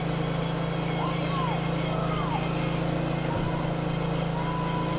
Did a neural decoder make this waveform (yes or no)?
no